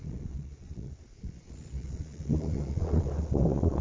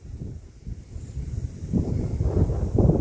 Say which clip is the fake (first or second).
first